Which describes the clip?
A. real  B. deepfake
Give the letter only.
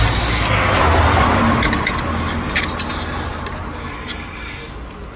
A